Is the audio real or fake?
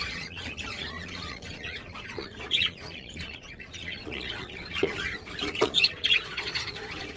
fake